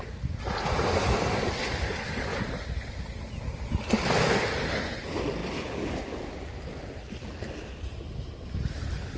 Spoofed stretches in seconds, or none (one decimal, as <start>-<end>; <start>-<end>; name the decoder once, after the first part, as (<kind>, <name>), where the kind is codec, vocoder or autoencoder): none